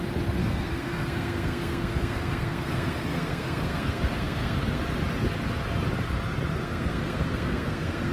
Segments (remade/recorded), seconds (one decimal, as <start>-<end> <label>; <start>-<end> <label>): 0.0-0.4 recorded; 0.4-4.8 remade; 4.8-6.5 recorded; 6.5-8.1 remade